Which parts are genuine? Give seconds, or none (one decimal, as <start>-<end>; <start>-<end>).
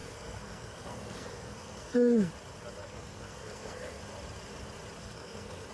2.3-2.8; 4.0-5.0